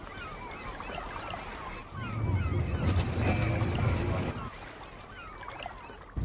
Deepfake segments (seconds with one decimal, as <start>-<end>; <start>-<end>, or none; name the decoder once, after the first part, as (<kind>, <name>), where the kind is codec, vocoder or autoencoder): none